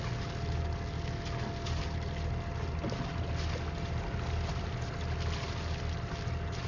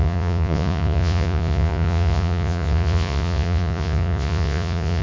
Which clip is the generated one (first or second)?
second